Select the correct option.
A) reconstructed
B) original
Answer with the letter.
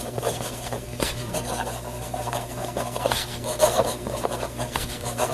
A